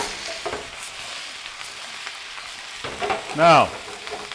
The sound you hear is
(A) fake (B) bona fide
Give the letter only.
B